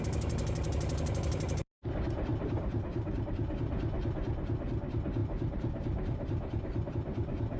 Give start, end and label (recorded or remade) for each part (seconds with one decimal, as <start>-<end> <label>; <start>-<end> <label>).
0.0-2.3 recorded; 2.3-3.2 remade; 3.2-5.2 recorded; 5.2-6.9 remade; 6.9-7.6 recorded